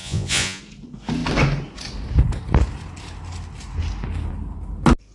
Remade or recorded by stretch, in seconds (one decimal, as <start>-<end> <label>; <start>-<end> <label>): 0.0-0.6 remade; 0.6-5.1 recorded